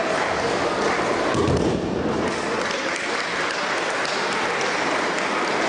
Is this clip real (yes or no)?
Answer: yes